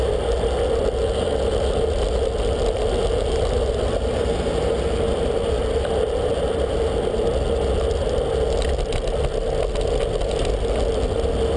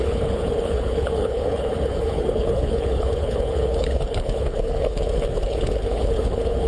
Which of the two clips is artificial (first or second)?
second